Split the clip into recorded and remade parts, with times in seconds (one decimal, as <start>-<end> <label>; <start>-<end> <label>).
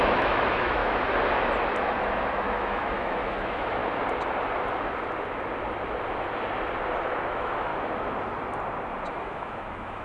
0.0-0.8 remade; 0.8-2.3 recorded; 2.3-3.8 remade; 3.8-7.3 recorded; 7.3-7.7 remade; 7.7-9.1 recorded; 9.1-10.0 remade